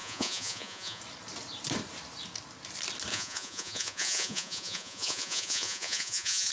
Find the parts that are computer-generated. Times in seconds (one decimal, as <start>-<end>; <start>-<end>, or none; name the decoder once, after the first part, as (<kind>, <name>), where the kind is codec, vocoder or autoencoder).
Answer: 0.0-1.0 (vocoder, Vocos); 3.1-6.5